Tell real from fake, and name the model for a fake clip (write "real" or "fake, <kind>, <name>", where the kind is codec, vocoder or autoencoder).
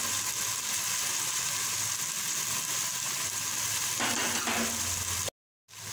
real